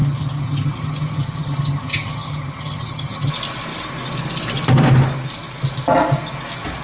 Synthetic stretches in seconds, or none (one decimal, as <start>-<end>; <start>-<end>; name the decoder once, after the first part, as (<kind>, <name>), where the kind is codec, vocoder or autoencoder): 0.0-3.3 (vocoder, HiFi-GAN)